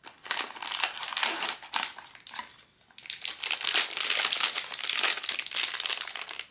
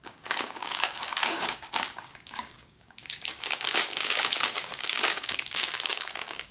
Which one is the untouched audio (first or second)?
first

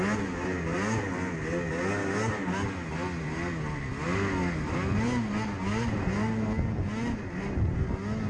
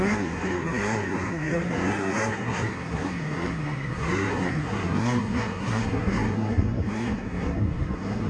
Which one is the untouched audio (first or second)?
first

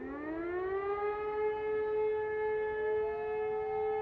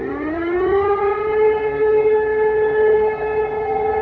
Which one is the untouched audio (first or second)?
first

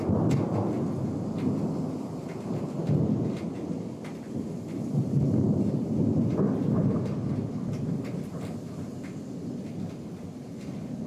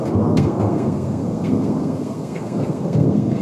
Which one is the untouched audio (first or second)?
first